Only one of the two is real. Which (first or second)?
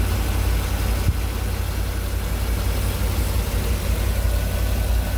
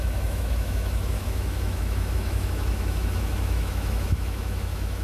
first